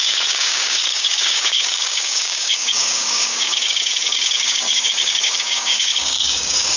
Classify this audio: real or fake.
fake